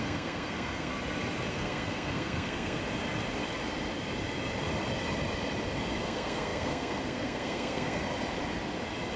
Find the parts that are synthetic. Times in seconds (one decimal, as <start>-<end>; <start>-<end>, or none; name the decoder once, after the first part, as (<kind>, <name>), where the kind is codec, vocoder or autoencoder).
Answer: 0.0-0.9 (codec, SNAC); 1.5-2.8; 6.0-8.0